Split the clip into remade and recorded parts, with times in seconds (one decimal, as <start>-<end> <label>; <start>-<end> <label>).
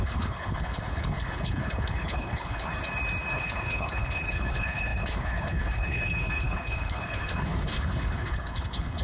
0.0-2.7 remade; 2.7-3.3 recorded; 3.3-9.0 remade